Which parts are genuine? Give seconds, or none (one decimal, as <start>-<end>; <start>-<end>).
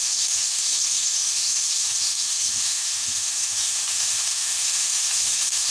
none